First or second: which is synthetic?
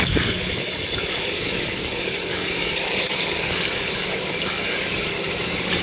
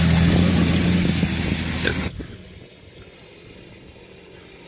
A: first